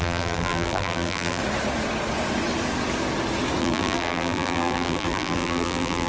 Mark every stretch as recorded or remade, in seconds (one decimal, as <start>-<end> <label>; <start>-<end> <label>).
0.0-1.4 remade; 1.4-3.6 recorded; 3.6-6.1 remade